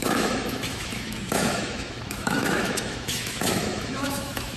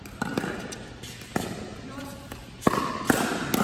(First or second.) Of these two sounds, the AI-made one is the first